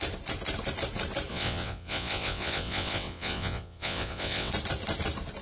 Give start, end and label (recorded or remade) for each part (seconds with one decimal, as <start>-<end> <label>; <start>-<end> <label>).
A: 0.0-1.3 recorded; 1.3-4.5 remade; 4.5-5.4 recorded